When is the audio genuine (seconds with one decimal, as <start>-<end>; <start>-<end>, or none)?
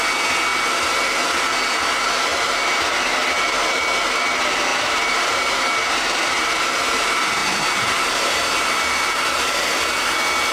0.0-2.3; 3.8-4.7; 5.4-7.4; 9.2-10.5